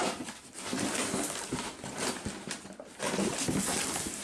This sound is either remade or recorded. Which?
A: recorded